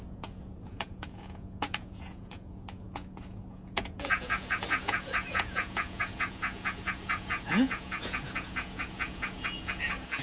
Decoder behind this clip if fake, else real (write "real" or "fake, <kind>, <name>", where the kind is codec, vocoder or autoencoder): fake, vocoder, Vocos